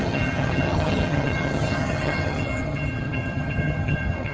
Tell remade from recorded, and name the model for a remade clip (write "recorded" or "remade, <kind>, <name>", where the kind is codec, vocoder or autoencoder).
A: remade, vocoder, HiFi-GAN